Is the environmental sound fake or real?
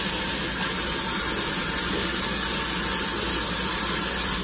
real